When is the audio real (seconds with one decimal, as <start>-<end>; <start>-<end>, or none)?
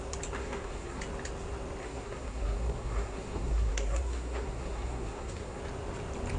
0.0-0.4; 1.0-1.8; 5.6-6.4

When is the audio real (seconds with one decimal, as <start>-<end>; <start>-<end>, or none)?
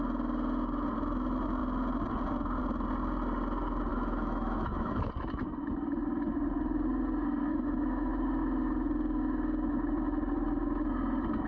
0.0-3.9; 5.0-7.5; 8.1-11.5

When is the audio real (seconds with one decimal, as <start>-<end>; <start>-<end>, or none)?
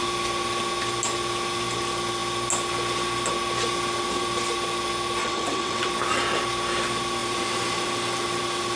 0.0-5.2; 5.9-8.8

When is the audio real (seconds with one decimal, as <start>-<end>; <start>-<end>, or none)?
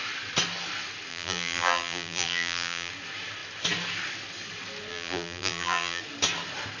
0.0-1.1; 2.9-4.9; 6.0-6.8